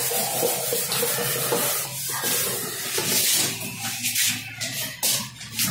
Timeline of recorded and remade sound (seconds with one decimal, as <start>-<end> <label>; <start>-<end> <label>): 0.0-5.7 recorded